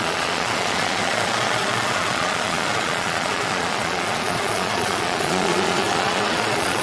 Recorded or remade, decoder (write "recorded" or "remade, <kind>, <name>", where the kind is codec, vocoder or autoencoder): remade, vocoder, Vocos